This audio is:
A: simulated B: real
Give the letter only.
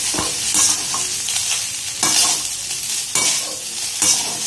B